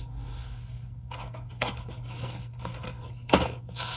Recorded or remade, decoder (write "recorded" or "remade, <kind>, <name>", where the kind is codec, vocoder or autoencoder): remade, codec, SNAC